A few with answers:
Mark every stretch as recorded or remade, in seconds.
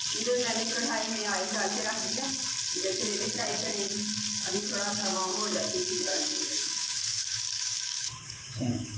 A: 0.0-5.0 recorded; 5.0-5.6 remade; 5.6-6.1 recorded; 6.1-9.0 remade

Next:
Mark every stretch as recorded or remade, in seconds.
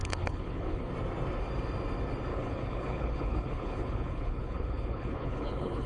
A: 0.0-0.9 remade; 0.9-2.3 recorded; 2.3-5.9 remade